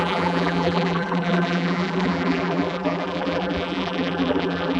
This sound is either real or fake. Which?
fake